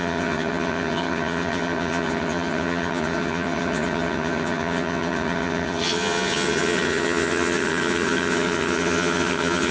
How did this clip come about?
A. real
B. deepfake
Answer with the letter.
B